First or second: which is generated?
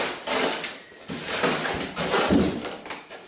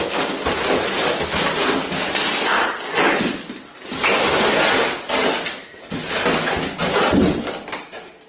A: first